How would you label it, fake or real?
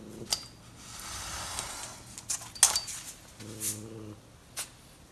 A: real